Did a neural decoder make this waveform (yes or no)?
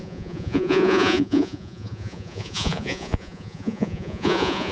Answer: yes